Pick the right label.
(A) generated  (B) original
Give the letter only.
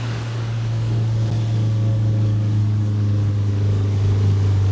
A